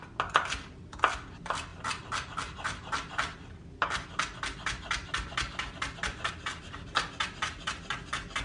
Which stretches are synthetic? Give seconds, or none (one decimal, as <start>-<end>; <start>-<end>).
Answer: none